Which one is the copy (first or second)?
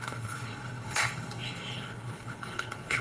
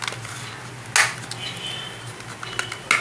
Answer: first